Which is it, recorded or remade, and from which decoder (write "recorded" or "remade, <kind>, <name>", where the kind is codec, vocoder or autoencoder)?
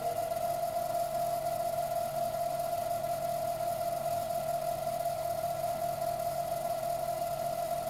recorded